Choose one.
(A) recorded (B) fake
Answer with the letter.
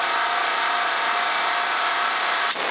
A